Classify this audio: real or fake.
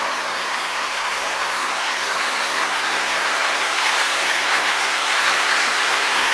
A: fake